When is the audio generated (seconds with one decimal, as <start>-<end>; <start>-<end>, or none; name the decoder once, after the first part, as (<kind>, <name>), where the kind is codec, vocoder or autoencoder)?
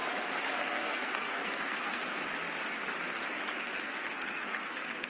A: 0.6-2.0 (codec, SNAC); 3.4-5.1